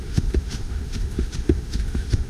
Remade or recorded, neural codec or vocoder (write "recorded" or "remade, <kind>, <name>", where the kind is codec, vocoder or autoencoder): remade, autoencoder, DAC-VAE